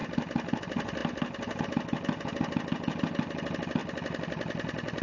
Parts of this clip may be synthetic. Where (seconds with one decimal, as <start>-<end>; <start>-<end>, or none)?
none